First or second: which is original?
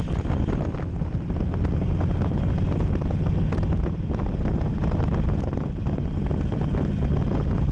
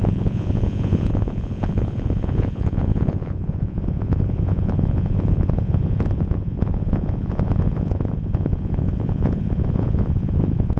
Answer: first